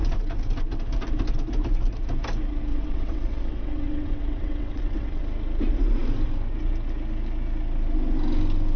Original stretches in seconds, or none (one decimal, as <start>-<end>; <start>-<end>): 0.0-2.7; 5.2-8.8